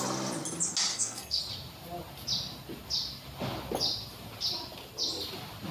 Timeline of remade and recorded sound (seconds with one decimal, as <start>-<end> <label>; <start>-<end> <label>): 0.0-0.9 recorded; 0.9-1.4 remade; 1.4-5.7 recorded